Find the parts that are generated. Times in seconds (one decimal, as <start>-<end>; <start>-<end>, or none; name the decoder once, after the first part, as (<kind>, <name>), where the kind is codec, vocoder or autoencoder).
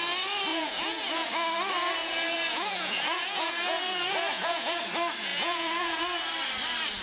0.5-1.3 (vocoder, Vocos); 2.0-4.8; 5.3-6.0